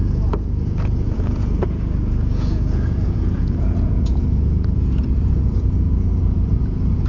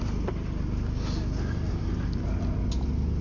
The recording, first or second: second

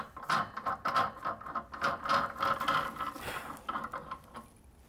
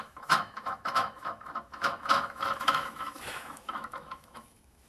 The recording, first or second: first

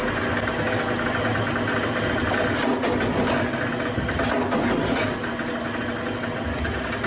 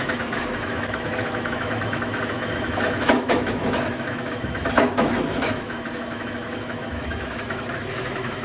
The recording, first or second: first